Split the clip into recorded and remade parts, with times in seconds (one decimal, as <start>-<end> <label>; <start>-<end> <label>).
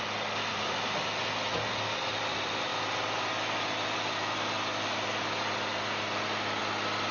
0.0-7.1 recorded